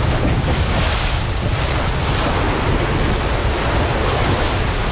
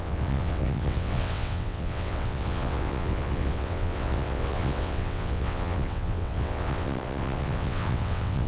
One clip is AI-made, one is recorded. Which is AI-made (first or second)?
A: second